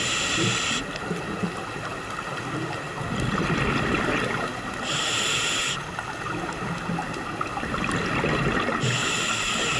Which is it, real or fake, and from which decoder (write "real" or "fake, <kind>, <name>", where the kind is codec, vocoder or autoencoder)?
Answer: real